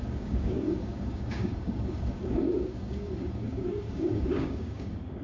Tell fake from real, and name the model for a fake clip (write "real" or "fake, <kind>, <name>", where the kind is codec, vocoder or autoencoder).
fake, codec, DAC